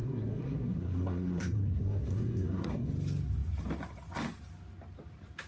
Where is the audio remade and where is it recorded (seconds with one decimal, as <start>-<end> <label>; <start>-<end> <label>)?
0.0-2.9 remade; 2.9-5.5 recorded